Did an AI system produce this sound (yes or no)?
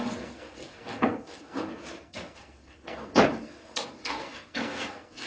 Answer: yes